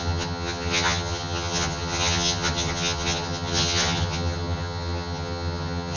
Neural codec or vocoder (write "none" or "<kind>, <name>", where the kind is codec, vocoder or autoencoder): vocoder, HiFi-GAN